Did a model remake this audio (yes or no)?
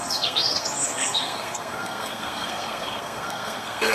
yes